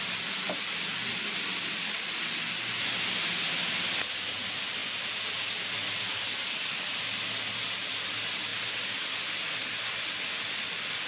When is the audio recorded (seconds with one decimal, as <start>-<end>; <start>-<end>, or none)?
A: 0.0-11.1